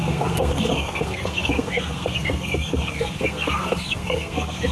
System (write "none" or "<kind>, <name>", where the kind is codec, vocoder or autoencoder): codec, SNAC